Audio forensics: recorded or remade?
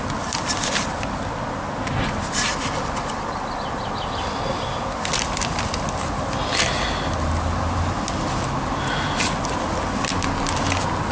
recorded